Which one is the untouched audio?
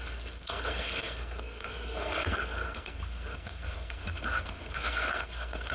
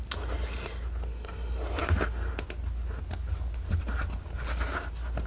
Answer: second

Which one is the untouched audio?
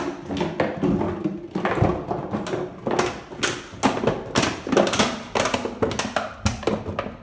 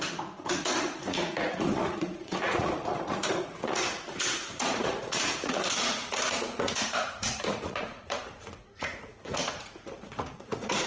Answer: first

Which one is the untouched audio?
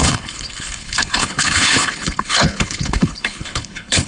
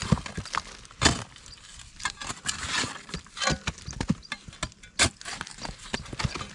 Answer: second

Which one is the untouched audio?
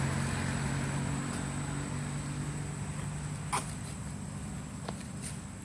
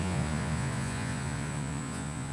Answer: first